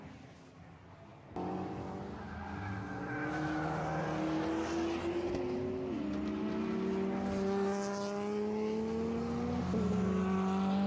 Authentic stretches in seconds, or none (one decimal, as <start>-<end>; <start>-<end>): 0.0-10.9